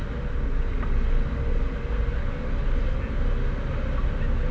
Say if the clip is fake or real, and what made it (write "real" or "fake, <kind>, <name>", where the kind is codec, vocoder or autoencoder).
real